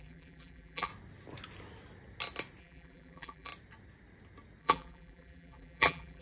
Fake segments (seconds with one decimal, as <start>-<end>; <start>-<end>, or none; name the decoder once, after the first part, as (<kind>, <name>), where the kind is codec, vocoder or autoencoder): 0.0-0.9 (vocoder, BigVGAN v2); 2.6-3.5; 4.6-6.2

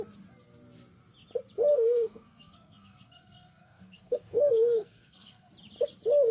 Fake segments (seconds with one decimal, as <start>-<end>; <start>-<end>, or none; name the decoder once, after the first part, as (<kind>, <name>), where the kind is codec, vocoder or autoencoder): 1.7-5.5 (codec, SNAC)

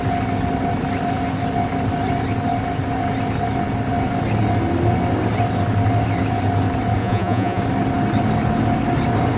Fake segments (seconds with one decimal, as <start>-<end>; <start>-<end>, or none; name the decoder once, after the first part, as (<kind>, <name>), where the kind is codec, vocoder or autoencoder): 7.0-7.6 (vocoder, Vocos)

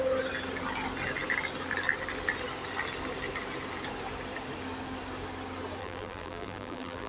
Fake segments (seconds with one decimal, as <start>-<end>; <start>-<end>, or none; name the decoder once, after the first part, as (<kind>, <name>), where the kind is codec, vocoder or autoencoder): 5.8-7.1 (vocoder, BigVGAN v2)

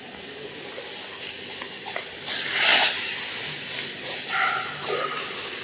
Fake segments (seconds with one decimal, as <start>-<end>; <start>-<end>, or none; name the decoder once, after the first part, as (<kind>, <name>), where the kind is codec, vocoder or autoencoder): none

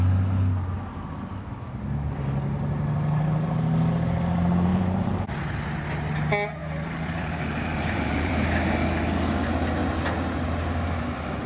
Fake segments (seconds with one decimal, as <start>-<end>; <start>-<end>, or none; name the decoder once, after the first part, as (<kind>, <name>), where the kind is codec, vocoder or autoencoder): 4.7-5.3 (vocoder, BigVGAN v2); 6.6-8.3